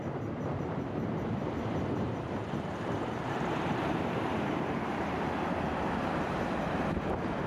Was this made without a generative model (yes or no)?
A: no